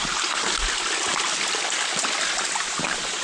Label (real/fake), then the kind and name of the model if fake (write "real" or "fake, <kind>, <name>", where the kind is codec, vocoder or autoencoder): real